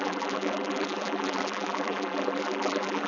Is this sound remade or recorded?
remade